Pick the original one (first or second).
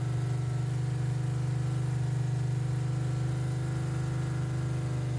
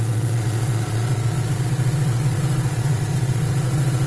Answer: first